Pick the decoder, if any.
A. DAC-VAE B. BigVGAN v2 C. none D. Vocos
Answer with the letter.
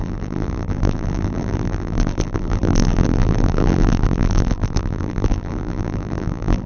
B